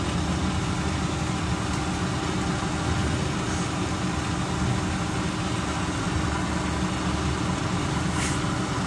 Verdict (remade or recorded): recorded